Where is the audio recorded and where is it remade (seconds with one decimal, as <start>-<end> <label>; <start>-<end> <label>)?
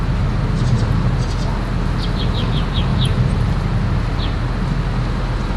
0.0-2.9 recorded; 2.9-3.5 remade; 3.5-5.6 recorded